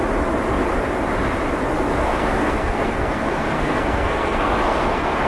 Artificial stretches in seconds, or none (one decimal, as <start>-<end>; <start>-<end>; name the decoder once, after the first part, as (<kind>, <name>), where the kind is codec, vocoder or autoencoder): 2.0-5.3 (codec, SNAC)